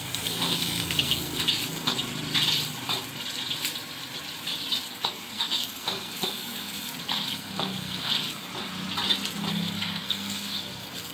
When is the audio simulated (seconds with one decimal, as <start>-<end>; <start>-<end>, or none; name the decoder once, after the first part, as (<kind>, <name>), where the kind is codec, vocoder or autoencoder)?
0.0-2.0 (codec, SNAC); 4.9-8.5; 9.5-11.1

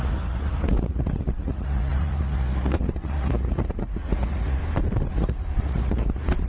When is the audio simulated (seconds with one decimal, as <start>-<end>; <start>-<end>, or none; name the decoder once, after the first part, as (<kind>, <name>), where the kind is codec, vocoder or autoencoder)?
0.0-4.6 (vocoder, Vocos); 5.1-6.5

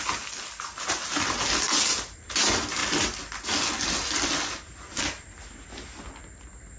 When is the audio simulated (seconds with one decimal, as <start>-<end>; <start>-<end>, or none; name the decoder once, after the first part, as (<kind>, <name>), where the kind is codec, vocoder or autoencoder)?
none

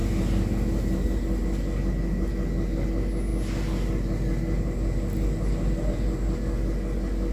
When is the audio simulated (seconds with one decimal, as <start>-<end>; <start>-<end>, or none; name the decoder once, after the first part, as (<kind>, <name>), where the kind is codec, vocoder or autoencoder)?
none

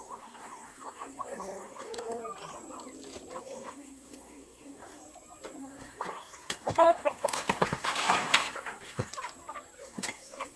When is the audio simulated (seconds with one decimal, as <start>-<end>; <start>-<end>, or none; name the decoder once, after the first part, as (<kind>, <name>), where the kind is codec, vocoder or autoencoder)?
0.0-2.2 (codec, SNAC); 3.4-5.0; 5.6-9.1; 9.8-10.6

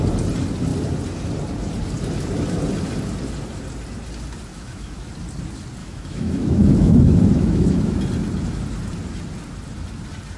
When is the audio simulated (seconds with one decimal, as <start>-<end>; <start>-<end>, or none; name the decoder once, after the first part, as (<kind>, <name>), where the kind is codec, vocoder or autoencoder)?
4.5-5.1 (autoencoder, DAC-VAE); 5.8-8.0